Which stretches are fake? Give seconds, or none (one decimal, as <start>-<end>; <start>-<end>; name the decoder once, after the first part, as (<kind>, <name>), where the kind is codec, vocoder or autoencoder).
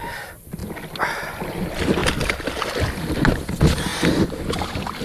none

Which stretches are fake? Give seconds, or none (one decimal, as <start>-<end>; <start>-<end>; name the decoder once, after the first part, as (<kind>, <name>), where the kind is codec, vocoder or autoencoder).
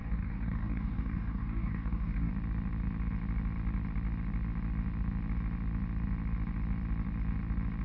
0.0-2.3 (codec, DAC)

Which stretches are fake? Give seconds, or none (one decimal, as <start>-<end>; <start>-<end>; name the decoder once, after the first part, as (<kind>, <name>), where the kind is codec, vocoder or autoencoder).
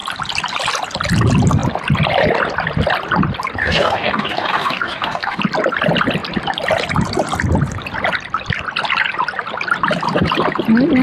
3.6-5.4 (codec, DAC)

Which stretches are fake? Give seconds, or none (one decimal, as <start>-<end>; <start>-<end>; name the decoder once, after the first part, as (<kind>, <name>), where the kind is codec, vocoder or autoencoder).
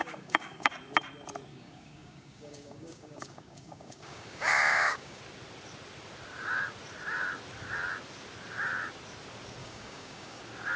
0.0-0.7 (codec, DAC); 1.5-5.2; 9.6-10.4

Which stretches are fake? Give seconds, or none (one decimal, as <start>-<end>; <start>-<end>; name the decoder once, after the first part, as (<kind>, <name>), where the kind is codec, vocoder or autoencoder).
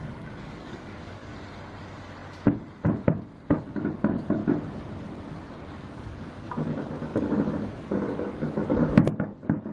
0.0-1.3 (codec, DAC); 3.6-4.4; 5.9-9.7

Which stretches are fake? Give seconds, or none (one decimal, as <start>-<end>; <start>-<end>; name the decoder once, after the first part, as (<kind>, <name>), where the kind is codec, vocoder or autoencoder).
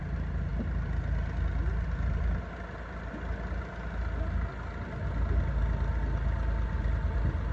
none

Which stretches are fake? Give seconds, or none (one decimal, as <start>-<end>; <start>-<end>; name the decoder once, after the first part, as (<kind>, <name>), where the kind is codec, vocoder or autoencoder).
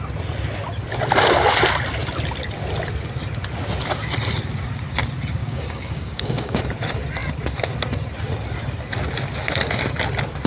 5.4-6.6 (codec, DAC)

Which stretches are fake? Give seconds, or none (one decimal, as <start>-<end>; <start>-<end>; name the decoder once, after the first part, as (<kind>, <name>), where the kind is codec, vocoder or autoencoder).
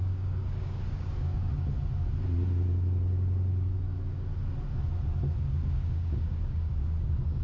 0.0-1.5 (codec, DAC); 5.2-7.4